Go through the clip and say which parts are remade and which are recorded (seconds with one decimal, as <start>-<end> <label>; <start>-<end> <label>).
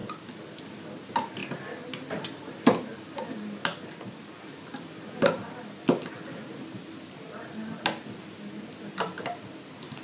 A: 0.0-10.0 recorded